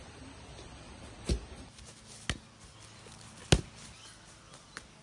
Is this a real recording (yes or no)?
yes